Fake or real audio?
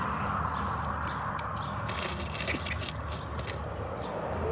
real